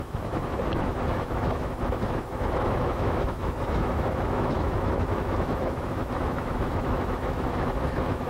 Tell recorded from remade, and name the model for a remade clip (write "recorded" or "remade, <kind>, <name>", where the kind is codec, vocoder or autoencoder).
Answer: remade, autoencoder, DAC-VAE